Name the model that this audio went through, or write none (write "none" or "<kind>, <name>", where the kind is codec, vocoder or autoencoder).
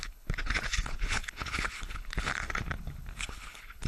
codec, HILCodec